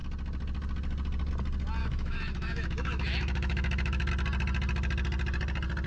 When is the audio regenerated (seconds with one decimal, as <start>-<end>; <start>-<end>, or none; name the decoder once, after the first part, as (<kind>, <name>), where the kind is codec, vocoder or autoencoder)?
1.8-4.1 (autoencoder, DAC-VAE)